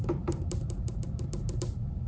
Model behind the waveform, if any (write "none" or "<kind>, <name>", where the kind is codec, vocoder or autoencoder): vocoder, BigVGAN v2